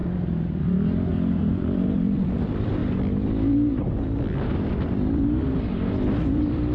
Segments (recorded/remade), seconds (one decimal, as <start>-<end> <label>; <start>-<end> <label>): 0.0-1.1 recorded; 1.1-2.8 remade; 2.8-4.7 recorded; 4.7-6.7 remade